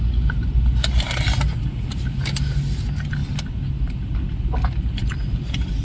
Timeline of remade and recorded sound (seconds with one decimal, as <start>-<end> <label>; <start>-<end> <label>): 0.0-5.8 recorded